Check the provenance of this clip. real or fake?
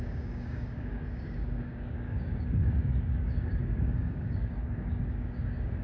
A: fake